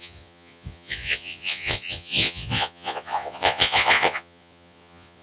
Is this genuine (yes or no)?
no